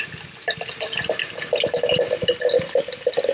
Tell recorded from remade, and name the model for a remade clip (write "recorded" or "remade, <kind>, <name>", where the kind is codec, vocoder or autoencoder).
recorded